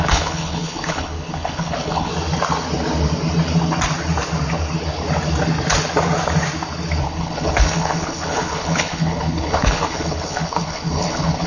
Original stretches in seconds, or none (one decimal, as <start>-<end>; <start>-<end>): 2.1-7.0